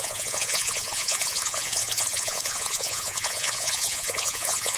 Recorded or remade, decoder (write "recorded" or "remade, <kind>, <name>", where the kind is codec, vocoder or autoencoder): remade, vocoder, Vocos